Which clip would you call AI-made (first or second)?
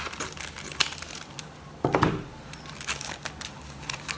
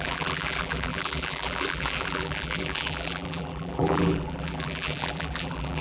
second